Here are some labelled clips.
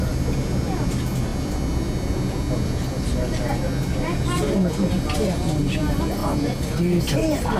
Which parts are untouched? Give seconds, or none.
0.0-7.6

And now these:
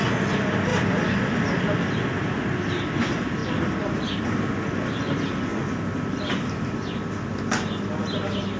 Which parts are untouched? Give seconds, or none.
0.0-0.7; 1.4-3.4; 4.2-8.6